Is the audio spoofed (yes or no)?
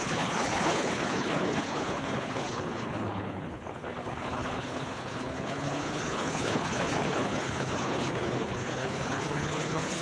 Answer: yes